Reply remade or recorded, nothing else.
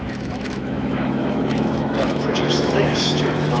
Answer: remade